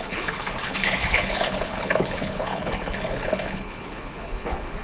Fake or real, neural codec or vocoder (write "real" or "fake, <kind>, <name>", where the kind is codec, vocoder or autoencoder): fake, codec, HILCodec